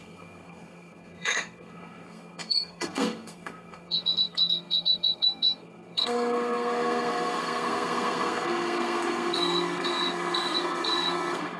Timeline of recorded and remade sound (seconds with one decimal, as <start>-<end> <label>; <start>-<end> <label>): 0.0-11.6 remade